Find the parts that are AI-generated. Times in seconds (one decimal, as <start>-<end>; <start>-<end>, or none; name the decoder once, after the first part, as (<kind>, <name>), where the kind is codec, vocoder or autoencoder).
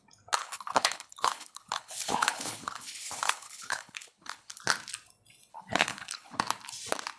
0.4-4.6 (codec, HILCodec); 5.5-6.4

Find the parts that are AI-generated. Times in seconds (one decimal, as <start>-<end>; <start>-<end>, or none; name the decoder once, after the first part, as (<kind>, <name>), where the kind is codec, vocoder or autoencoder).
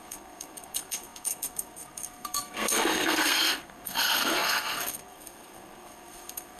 0.0-6.6 (codec, SNAC)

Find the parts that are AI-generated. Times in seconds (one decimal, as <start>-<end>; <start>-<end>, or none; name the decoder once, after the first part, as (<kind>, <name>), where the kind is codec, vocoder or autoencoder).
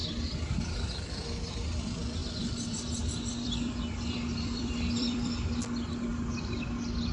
0.0-1.5 (vocoder, BigVGAN v2); 2.2-5.6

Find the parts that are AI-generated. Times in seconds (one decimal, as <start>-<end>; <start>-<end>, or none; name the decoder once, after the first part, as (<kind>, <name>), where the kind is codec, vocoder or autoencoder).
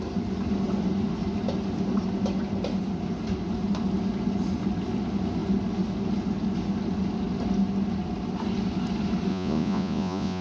9.3-10.4 (vocoder, Vocos)